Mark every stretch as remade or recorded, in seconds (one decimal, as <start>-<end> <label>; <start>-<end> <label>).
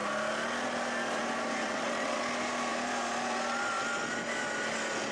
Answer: 0.0-1.6 recorded; 1.6-2.2 remade; 2.2-5.1 recorded